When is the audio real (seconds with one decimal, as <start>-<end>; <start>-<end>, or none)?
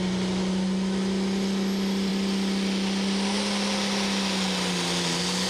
0.0-5.5